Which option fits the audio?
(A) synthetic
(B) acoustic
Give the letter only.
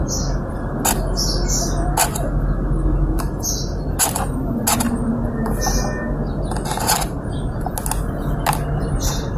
B